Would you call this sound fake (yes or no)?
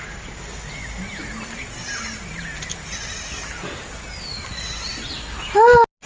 no